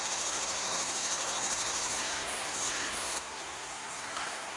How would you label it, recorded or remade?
remade